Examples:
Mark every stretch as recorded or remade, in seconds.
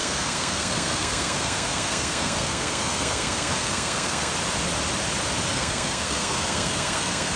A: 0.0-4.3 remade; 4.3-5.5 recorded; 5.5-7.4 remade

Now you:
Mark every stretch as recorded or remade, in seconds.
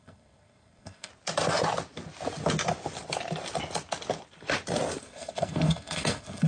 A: 0.0-1.1 remade; 1.1-5.0 recorded; 5.0-6.5 remade